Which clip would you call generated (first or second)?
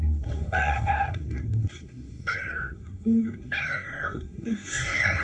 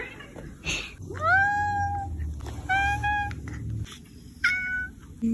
first